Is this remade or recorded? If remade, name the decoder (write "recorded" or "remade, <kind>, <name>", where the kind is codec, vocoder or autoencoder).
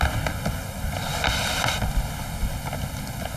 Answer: recorded